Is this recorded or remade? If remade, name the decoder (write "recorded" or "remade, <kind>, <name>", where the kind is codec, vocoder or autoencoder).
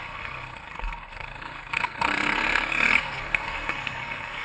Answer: remade, codec, SNAC